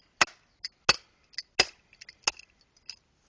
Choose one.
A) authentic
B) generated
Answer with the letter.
A